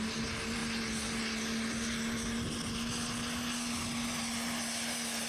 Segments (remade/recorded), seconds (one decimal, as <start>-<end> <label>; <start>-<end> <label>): 0.0-5.3 recorded